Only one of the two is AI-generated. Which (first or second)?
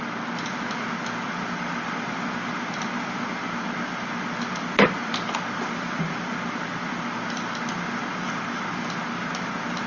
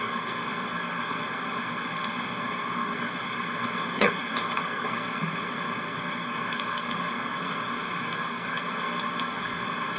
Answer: second